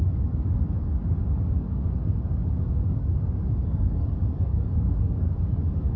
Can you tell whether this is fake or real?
fake